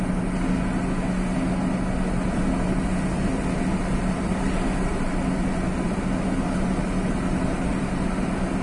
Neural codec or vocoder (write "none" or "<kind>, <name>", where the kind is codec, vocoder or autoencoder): none